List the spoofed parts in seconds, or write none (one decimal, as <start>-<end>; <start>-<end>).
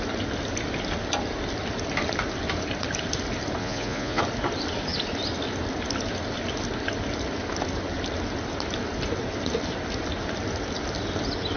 3.6-4.2